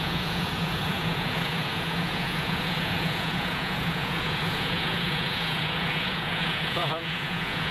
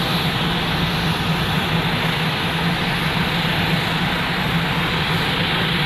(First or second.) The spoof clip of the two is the first